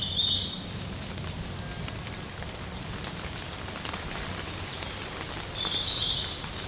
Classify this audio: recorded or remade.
recorded